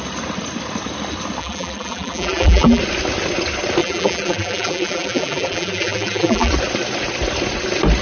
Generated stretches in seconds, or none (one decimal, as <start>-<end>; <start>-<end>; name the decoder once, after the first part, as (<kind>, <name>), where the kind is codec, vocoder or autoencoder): 1.4-2.8 (vocoder, BigVGAN v2); 3.8-6.5